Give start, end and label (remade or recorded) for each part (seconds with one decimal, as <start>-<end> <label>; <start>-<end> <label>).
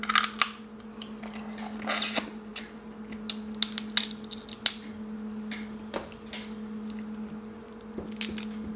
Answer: 0.0-8.8 recorded